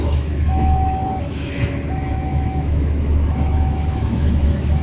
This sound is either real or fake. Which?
fake